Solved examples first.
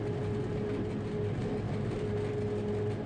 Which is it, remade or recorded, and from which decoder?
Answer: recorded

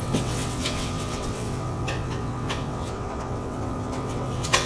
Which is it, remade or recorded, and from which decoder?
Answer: remade, vocoder, WaveNeXt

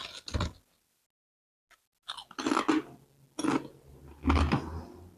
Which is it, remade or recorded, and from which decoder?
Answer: recorded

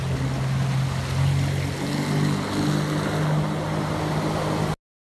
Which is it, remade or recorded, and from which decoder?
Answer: recorded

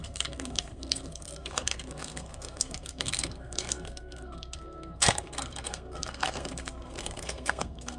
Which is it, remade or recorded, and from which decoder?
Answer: remade, codec, SNAC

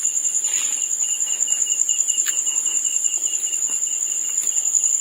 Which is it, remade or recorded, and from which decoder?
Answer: recorded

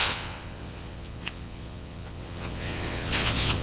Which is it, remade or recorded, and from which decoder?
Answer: remade, vocoder, WaveNeXt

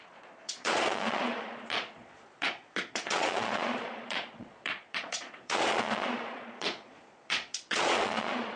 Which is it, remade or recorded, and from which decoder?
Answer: remade, vocoder, Vocos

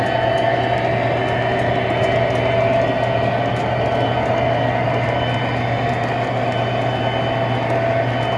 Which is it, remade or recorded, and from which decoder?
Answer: recorded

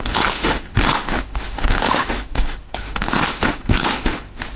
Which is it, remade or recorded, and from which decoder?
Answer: remade, autoencoder, DAC-VAE